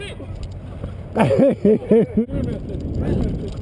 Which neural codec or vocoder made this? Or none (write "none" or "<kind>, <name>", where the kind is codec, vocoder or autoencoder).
none